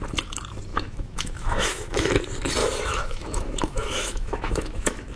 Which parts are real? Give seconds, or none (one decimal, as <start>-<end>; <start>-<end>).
0.0-0.7; 2.1-2.6